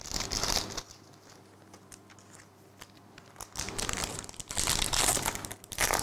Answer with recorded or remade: recorded